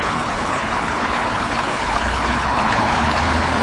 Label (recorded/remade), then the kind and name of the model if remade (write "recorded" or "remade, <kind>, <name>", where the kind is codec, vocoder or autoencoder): remade, codec, HILCodec